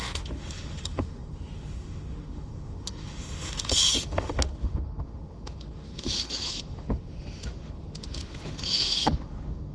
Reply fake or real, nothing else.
fake